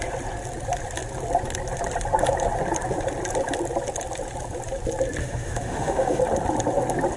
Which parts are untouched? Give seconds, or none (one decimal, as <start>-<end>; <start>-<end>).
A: 0.0-5.2; 6.2-7.2